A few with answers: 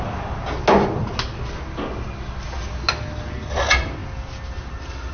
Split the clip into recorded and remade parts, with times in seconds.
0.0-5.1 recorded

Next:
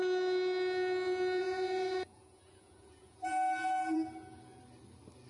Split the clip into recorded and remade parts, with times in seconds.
0.0-1.4 recorded; 1.4-4.6 remade; 4.6-5.3 recorded

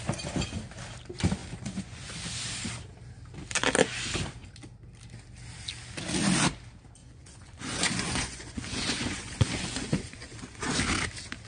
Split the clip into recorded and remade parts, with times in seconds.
0.0-1.4 recorded; 1.4-2.1 remade; 2.1-7.0 recorded; 7.0-10.8 remade; 10.8-11.5 recorded

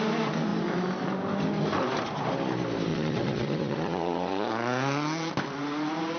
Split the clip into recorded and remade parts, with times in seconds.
0.0-2.9 recorded; 2.9-4.5 remade; 4.5-6.2 recorded

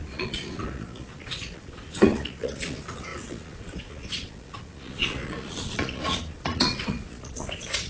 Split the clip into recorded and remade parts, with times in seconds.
0.0-7.9 remade

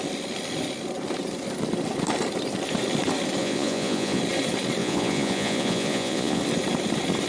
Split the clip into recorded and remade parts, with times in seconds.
0.0-3.4 recorded; 3.4-4.2 remade; 4.2-4.8 recorded; 4.8-6.4 remade; 6.4-7.3 recorded

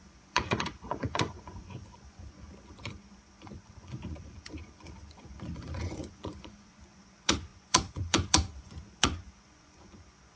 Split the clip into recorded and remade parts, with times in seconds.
0.0-10.4 remade

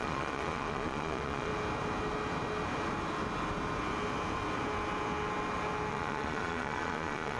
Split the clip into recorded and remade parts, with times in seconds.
0.0-1.5 remade; 1.5-5.9 recorded; 5.9-7.4 remade